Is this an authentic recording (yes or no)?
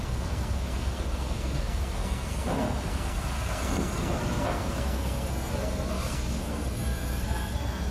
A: no